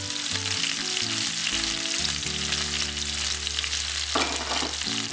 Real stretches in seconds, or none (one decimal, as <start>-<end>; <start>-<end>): 0.0-5.1